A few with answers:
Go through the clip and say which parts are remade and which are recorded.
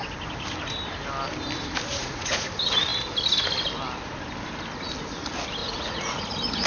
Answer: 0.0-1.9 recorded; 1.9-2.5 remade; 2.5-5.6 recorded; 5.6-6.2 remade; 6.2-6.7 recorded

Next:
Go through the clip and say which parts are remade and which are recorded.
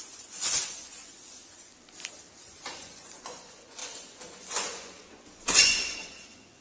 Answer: 0.0-1.7 remade; 1.7-2.4 recorded; 2.4-6.6 remade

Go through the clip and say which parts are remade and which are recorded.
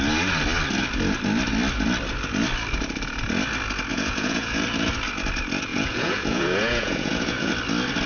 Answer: 0.0-3.9 recorded; 3.9-4.6 remade; 4.6-5.7 recorded; 5.7-7.5 remade; 7.5-8.1 recorded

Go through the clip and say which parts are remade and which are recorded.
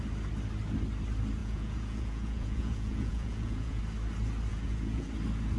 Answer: 0.0-1.4 recorded; 1.4-3.8 remade; 3.8-4.5 recorded; 4.5-5.1 remade; 5.1-5.6 recorded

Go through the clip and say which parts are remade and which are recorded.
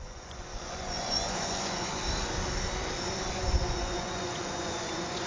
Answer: 0.0-2.0 remade; 2.0-3.3 recorded; 3.3-5.3 remade